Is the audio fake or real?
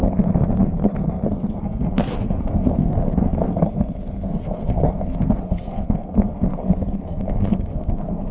fake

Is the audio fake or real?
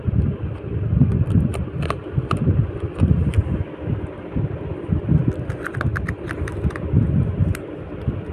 real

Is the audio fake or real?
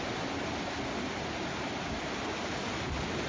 real